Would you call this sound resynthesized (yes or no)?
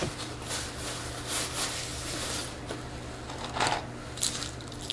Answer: no